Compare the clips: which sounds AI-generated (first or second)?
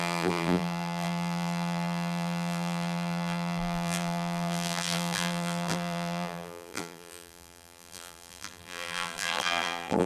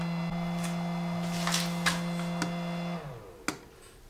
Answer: first